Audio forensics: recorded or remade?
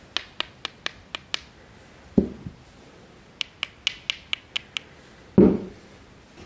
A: recorded